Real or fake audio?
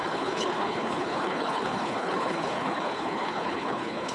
fake